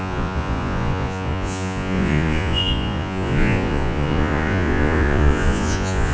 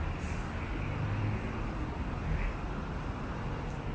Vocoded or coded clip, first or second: first